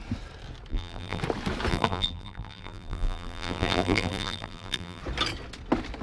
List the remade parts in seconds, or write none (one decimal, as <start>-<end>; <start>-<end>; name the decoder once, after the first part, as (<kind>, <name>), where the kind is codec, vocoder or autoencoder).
0.7-1.2 (vocoder, BigVGAN v2); 1.7-5.0